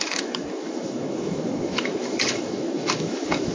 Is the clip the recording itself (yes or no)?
no